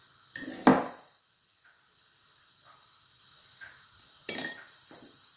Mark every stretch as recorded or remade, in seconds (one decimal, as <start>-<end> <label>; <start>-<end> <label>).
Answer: 0.0-5.4 recorded